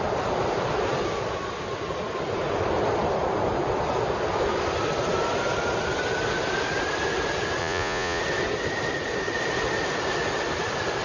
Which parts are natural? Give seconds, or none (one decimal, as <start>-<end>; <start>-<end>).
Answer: 0.0-7.6; 8.2-11.0

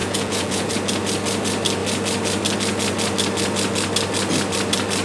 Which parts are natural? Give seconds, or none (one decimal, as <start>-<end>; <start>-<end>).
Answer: 0.7-5.0